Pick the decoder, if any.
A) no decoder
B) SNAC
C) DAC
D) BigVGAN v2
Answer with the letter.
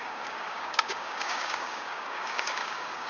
C